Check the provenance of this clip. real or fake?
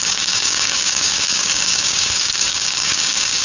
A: fake